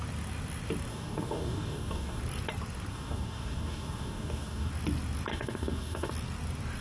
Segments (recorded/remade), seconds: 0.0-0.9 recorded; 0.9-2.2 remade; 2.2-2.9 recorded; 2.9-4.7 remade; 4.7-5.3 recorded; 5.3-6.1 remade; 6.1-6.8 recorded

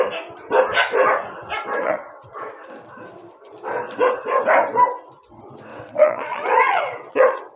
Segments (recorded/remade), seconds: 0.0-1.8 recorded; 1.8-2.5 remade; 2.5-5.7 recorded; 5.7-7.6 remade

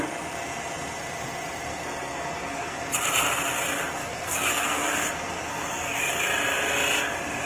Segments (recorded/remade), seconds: 0.0-1.7 recorded; 1.7-2.8 remade; 2.8-4.0 recorded; 4.0-6.0 remade; 6.0-7.5 recorded

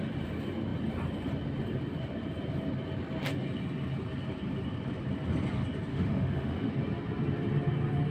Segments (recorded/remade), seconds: 0.0-5.9 recorded; 5.9-6.7 remade; 6.7-8.1 recorded

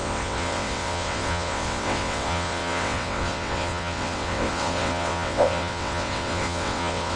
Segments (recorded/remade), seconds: 0.0-7.2 remade

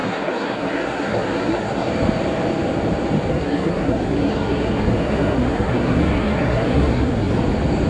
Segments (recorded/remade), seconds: 0.0-1.9 remade; 1.9-3.3 recorded; 3.3-7.3 remade; 7.3-7.9 recorded